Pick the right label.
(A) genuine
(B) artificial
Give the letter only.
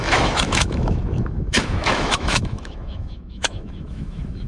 B